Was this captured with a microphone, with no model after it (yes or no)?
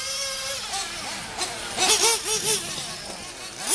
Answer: yes